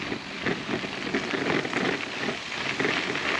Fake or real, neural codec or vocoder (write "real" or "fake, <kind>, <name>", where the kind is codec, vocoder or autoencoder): real